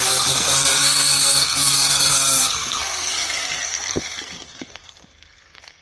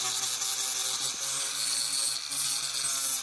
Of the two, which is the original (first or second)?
second